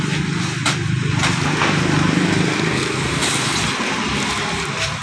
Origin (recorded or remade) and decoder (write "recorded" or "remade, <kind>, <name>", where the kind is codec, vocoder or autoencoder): recorded